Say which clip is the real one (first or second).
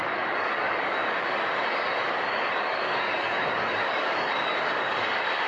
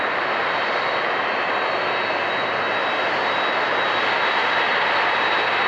second